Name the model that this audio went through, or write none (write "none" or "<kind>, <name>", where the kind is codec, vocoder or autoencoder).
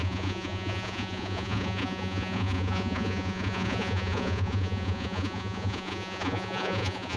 vocoder, Vocos